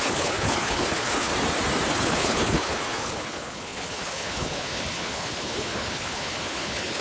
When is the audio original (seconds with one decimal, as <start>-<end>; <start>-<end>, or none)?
1.3-1.9

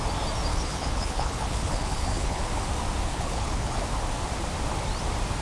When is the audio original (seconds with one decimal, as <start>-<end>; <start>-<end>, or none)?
0.0-0.5; 2.5-3.1; 3.8-5.4

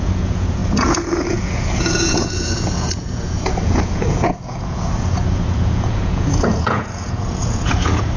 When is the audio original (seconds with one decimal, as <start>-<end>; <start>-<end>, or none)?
none

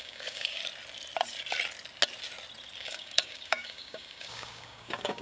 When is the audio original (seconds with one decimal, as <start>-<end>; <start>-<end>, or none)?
0.6-2.8

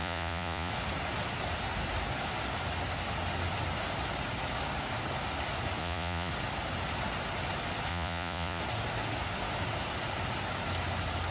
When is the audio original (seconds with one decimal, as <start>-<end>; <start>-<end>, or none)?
0.7-5.8; 6.3-7.9; 8.6-11.3